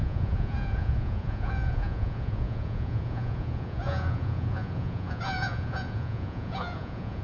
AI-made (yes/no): yes